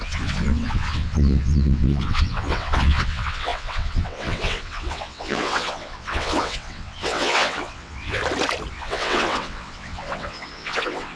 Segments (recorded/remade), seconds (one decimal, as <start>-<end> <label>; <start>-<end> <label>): 0.0-8.2 remade; 8.2-8.7 recorded; 8.7-11.2 remade